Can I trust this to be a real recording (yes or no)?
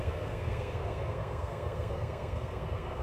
no